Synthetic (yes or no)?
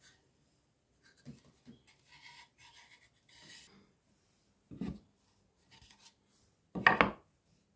no